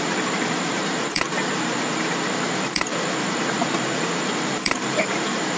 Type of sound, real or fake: fake